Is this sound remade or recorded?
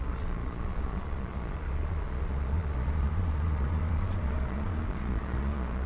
remade